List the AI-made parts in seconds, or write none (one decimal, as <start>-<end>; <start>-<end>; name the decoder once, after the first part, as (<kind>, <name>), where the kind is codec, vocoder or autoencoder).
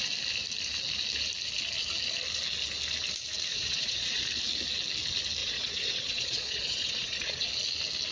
3.5-4.2 (vocoder, Vocos); 5.4-7.5